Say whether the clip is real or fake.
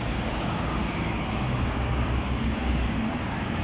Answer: fake